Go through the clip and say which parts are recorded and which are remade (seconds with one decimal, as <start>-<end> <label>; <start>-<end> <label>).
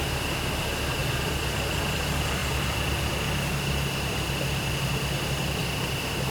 0.0-1.0 recorded; 1.0-1.5 remade; 1.5-6.3 recorded